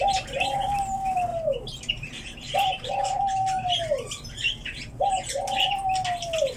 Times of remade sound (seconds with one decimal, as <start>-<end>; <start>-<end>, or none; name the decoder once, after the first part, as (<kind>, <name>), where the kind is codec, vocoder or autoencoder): 1.3-2.9 (vocoder, BigVGAN v2)